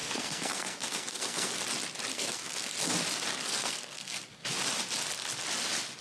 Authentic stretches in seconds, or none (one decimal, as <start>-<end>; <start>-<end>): 1.5-2.1; 2.7-3.3; 4.2-6.0